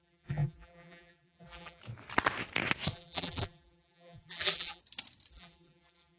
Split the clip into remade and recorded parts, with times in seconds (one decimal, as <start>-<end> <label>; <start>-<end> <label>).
0.0-1.8 remade; 1.8-2.9 recorded; 2.9-4.8 remade; 4.8-5.3 recorded; 5.3-6.2 remade